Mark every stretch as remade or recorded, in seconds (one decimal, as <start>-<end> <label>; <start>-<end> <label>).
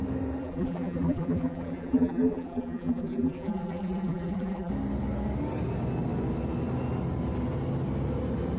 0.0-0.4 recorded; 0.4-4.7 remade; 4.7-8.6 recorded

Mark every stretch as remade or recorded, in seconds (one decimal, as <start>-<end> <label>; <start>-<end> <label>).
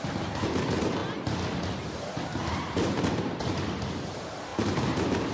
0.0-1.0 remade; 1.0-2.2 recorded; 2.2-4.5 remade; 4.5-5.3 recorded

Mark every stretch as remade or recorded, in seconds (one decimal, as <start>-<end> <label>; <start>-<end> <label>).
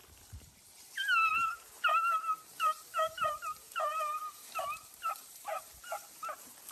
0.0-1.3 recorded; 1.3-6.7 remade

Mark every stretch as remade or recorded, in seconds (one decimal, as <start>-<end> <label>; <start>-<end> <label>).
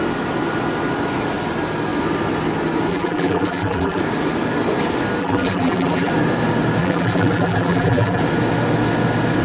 0.0-2.9 recorded; 2.9-4.0 remade; 4.0-5.2 recorded; 5.2-6.1 remade; 6.1-6.8 recorded; 6.8-8.2 remade; 8.2-9.4 recorded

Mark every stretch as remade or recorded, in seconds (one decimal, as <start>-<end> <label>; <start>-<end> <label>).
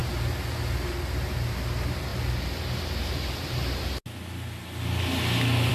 0.0-5.7 recorded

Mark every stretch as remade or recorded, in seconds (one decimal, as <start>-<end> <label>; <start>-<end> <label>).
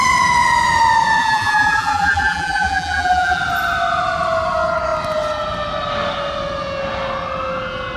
0.0-1.2 recorded; 1.2-3.4 remade; 3.4-8.0 recorded